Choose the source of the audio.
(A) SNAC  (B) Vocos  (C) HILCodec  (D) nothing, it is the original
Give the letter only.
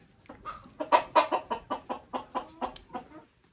D